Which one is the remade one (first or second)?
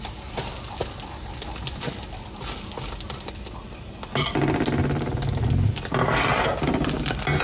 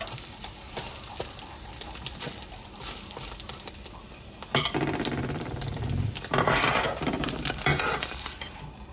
second